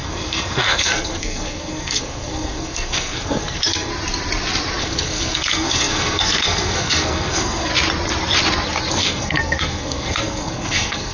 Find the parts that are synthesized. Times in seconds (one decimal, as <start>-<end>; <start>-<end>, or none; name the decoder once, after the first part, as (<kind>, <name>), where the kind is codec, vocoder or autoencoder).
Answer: 0.0-3.9 (codec, SNAC); 4.8-7.7; 8.9-11.1